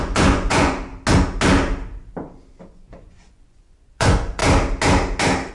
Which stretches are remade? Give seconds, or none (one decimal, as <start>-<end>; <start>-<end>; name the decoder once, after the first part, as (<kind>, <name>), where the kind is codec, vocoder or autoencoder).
0.0-0.9 (vocoder, Vocos); 2.7-4.4